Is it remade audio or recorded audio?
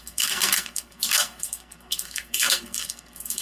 remade